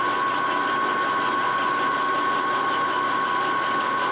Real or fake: real